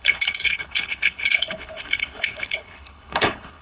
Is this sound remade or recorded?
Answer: remade